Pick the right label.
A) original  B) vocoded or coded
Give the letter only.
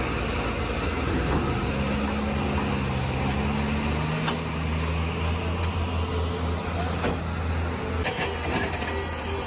A